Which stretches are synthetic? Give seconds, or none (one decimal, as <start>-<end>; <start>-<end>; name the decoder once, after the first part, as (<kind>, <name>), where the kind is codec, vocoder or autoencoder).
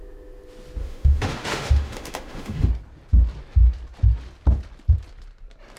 0.8-2.7 (autoencoder, DAC-VAE)